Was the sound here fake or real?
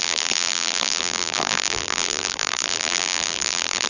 fake